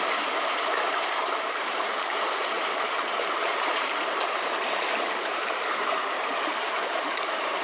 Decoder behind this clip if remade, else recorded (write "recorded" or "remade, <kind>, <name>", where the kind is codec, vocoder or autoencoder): remade, vocoder, BigVGAN v2